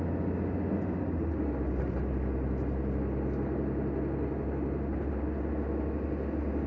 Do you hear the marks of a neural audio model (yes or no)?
no